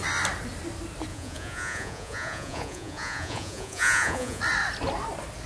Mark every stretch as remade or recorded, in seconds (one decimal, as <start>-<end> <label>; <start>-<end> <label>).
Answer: 0.0-1.1 recorded; 1.1-4.4 remade; 4.4-5.5 recorded

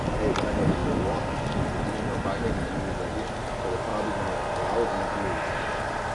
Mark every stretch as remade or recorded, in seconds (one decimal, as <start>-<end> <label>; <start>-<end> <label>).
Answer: 0.0-6.1 recorded

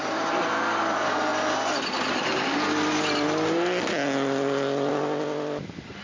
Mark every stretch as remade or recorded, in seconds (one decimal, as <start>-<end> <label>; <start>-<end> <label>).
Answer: 0.0-6.0 recorded

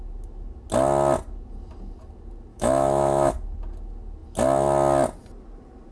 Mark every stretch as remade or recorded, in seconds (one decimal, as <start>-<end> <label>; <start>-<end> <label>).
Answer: 0.0-2.5 recorded; 2.5-3.3 remade; 3.3-5.9 recorded

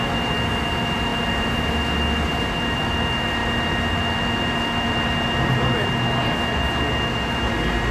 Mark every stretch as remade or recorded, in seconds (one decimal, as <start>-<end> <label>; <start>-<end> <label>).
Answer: 0.0-7.9 recorded

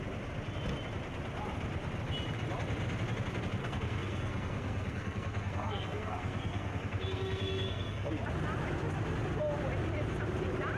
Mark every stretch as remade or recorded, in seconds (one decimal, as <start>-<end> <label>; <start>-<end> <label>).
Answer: 0.0-3.6 recorded; 3.6-8.1 remade; 8.1-10.8 recorded